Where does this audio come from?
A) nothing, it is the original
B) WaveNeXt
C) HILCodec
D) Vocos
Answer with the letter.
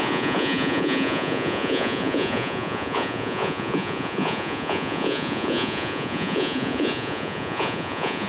D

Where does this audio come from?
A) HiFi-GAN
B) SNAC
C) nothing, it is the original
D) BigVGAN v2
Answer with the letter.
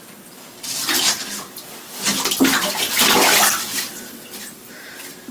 D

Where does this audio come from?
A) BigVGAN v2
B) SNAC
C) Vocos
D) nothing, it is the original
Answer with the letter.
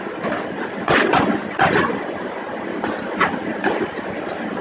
D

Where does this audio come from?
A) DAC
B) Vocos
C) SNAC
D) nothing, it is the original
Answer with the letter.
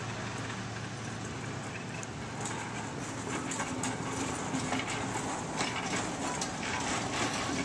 D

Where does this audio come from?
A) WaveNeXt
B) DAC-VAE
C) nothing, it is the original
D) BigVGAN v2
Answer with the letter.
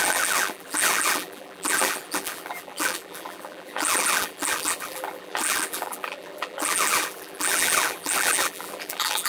D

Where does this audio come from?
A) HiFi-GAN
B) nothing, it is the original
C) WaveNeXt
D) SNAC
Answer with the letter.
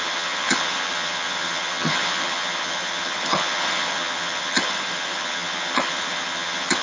A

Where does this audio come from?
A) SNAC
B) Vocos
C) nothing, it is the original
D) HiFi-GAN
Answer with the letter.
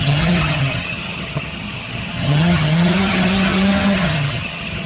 D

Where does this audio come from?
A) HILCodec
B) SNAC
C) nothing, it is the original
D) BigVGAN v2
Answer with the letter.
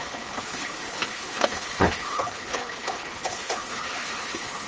A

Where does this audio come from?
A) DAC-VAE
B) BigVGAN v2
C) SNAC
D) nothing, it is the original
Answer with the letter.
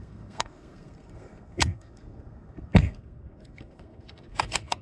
C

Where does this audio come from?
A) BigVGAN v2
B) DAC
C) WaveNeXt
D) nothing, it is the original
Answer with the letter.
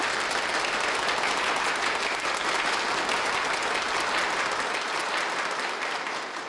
D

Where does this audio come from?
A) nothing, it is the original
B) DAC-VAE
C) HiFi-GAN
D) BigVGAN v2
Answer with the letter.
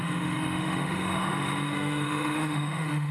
B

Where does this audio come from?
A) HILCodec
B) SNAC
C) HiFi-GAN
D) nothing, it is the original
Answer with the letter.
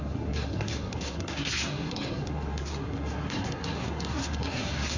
B